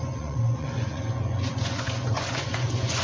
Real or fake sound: fake